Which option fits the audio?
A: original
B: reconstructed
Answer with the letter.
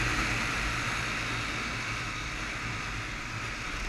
A